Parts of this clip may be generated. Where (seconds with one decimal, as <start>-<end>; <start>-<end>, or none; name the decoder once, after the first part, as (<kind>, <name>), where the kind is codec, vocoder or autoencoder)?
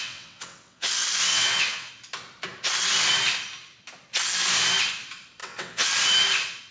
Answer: 0.0-0.9 (vocoder, WaveNeXt); 1.3-1.9; 5.4-5.9